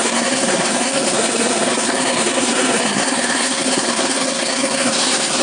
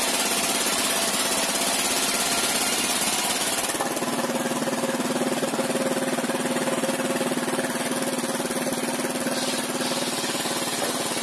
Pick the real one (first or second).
second